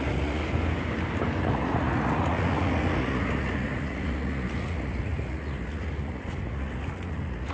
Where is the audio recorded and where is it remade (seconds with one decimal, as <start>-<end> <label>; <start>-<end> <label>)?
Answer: 0.0-0.4 remade; 0.4-1.4 recorded; 1.4-7.5 remade